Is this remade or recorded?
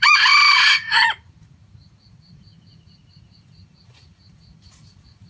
remade